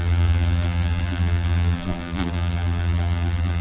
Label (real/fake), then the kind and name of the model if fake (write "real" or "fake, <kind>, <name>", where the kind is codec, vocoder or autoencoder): fake, vocoder, BigVGAN v2